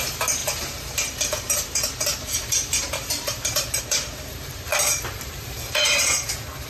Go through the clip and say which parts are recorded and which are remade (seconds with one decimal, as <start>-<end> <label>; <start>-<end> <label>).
0.0-6.7 remade